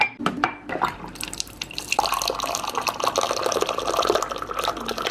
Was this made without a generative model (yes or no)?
no